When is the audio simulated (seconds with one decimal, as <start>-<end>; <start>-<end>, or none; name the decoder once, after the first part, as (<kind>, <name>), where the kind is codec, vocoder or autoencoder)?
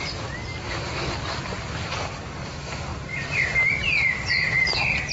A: 2.9-4.1 (vocoder, BigVGAN v2)